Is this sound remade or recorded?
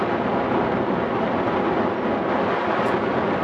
recorded